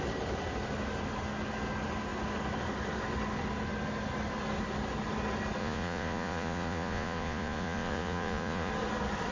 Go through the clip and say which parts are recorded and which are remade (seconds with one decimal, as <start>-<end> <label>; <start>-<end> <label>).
0.0-5.6 recorded; 5.6-8.7 remade; 8.7-9.3 recorded